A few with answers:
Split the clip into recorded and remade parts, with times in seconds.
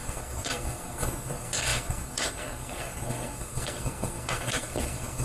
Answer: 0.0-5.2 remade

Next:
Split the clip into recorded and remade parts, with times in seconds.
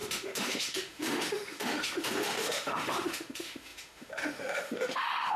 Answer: 0.0-5.4 remade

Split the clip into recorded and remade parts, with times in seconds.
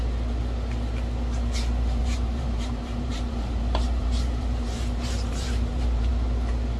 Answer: 0.0-2.0 recorded; 2.0-6.1 remade; 6.1-6.8 recorded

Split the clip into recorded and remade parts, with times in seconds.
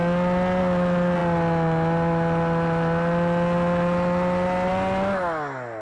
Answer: 0.0-5.8 recorded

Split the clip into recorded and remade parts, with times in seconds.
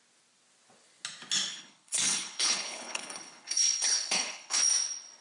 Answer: 0.0-1.5 recorded; 1.5-4.6 remade; 4.6-5.2 recorded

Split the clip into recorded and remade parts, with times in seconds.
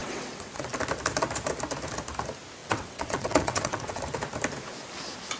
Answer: 0.0-0.7 remade; 0.7-2.6 recorded; 2.6-4.0 remade; 4.0-5.4 recorded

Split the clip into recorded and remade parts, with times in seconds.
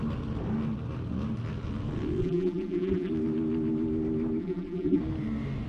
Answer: 0.0-2.2 recorded; 2.2-3.1 remade; 3.1-4.4 recorded; 4.4-5.0 remade; 5.0-5.7 recorded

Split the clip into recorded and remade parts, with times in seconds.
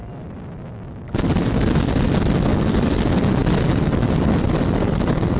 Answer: 0.0-5.4 recorded